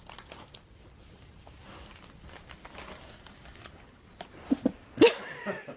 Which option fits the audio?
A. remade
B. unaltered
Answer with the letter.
B